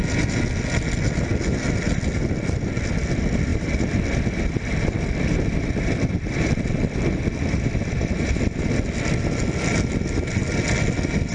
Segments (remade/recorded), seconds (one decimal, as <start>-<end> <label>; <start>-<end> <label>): 0.0-3.5 recorded; 3.5-8.7 remade; 8.7-11.3 recorded